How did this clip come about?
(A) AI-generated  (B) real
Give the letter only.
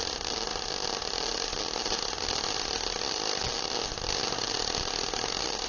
B